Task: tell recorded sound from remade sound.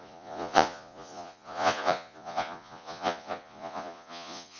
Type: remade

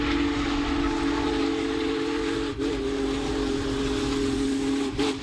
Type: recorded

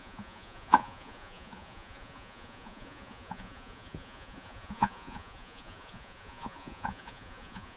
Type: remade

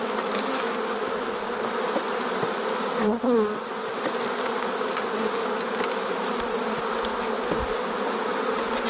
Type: recorded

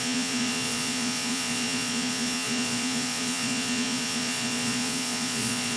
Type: remade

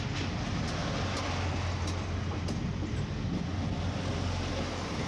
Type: recorded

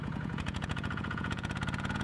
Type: remade